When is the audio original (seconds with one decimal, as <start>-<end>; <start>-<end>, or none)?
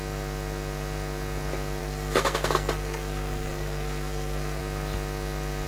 0.0-1.8; 4.6-5.7